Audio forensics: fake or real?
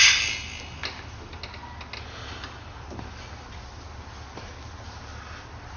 real